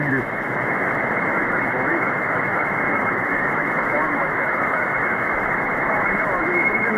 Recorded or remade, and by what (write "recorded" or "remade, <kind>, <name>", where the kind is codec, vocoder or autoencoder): remade, autoencoder, DAC-VAE